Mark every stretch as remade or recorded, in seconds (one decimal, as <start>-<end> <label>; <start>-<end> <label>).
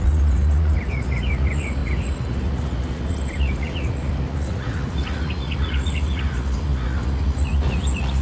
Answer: 0.0-8.2 remade